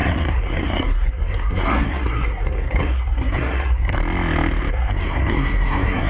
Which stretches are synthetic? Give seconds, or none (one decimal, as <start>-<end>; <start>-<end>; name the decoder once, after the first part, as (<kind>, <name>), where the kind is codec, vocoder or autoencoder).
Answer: 0.0-4.0 (codec, SNAC); 4.7-6.1